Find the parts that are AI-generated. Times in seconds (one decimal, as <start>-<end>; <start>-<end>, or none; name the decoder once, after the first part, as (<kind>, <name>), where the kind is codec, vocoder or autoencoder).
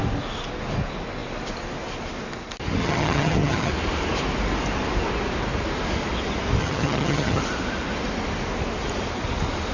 2.8-3.7 (vocoder, HiFi-GAN); 6.6-7.4